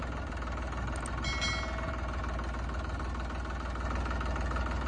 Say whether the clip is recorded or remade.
recorded